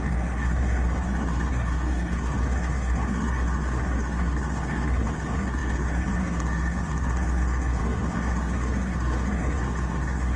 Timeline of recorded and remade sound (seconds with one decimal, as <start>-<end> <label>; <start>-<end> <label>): 0.0-10.4 remade